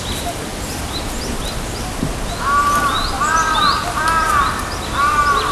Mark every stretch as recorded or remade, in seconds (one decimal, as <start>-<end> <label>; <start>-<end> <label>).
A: 0.0-0.5 recorded; 0.5-1.1 remade; 1.1-5.5 recorded